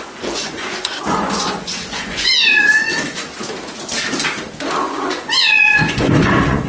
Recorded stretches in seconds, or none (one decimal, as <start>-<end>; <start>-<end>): 3.3-4.8